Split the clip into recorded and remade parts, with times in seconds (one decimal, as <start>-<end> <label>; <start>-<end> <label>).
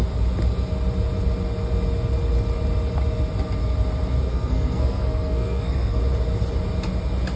0.0-4.3 recorded; 4.3-6.0 remade; 6.0-7.4 recorded